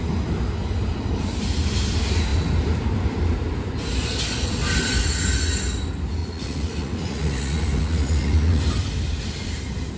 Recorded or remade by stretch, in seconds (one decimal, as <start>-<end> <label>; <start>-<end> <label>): 0.0-6.2 recorded; 6.2-8.6 remade; 8.6-10.0 recorded